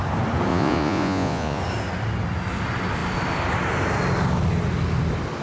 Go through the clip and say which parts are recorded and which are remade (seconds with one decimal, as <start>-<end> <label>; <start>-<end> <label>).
0.0-0.5 recorded; 0.5-1.6 remade; 1.6-5.4 recorded